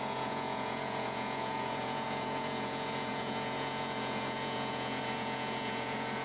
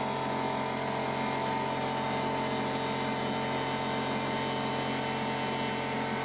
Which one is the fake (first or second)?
first